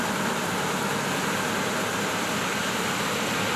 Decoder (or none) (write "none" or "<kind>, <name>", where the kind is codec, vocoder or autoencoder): vocoder, BigVGAN v2